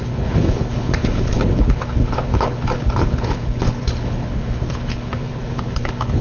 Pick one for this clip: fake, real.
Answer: fake